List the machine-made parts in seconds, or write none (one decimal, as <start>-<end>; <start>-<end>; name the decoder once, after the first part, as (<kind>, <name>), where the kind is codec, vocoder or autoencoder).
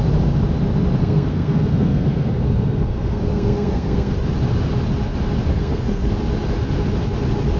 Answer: 1.0-4.1 (codec, SNAC); 5.5-6.1